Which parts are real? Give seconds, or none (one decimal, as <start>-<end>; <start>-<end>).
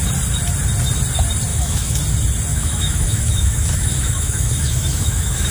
0.0-1.5; 2.0-2.5